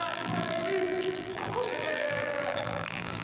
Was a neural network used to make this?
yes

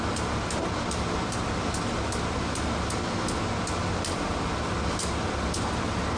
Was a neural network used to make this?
no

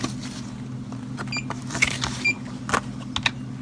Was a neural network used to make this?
no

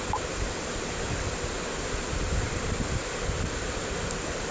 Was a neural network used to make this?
no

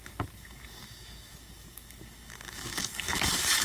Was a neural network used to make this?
yes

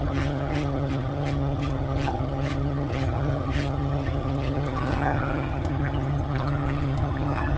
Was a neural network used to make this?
yes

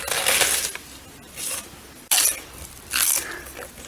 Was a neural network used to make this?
no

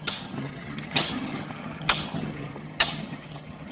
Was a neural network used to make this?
yes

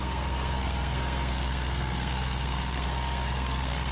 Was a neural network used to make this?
yes